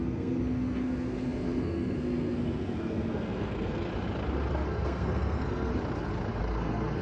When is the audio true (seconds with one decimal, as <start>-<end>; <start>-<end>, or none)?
3.9-4.5; 5.7-6.4